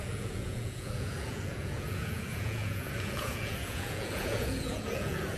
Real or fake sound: fake